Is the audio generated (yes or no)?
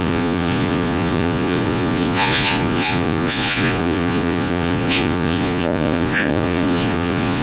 yes